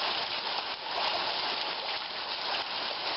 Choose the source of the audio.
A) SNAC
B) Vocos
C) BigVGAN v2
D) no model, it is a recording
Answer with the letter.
D